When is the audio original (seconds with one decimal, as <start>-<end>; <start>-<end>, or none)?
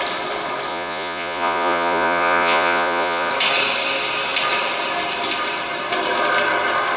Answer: 0.0-0.7; 3.3-7.0